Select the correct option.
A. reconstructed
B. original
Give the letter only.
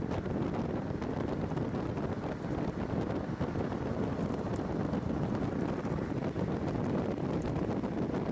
B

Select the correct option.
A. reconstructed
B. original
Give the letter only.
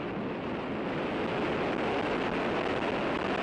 B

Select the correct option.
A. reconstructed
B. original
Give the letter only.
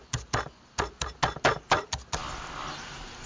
B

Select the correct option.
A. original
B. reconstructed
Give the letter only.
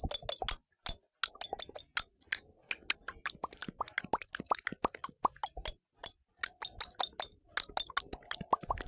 A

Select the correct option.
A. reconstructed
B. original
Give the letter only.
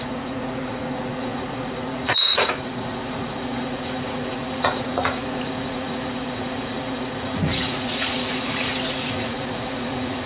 A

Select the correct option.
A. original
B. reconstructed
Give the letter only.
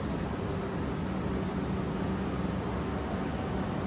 A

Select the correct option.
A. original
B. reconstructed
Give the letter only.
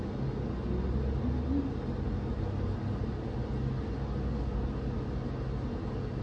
A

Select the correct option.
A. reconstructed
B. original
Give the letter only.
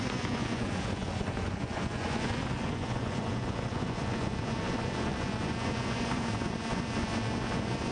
A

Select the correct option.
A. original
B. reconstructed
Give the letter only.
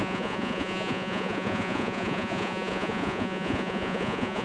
B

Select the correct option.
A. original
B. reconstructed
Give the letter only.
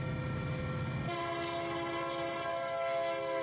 A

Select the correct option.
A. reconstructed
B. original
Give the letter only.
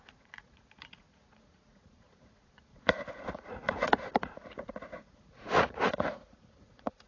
A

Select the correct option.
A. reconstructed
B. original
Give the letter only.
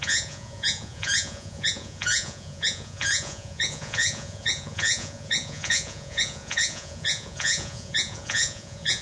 A